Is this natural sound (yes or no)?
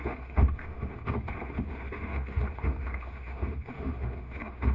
no